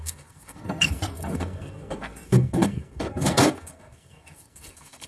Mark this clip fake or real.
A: fake